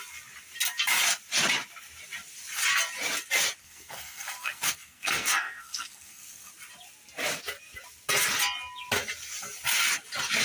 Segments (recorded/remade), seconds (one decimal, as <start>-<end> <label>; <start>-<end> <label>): 0.0-3.6 recorded; 3.6-6.5 remade; 6.5-10.4 recorded